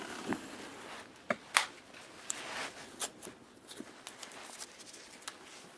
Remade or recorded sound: recorded